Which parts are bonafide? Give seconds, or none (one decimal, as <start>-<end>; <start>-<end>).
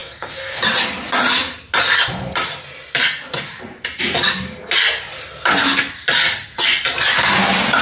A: 0.6-7.8